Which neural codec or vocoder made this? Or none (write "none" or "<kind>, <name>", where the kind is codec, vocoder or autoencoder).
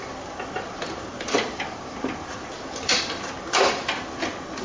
vocoder, BigVGAN v2